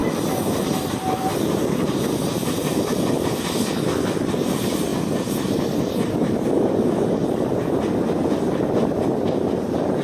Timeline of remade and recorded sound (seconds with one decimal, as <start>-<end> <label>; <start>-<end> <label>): 0.0-10.0 remade